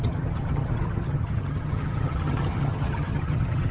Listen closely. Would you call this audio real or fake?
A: fake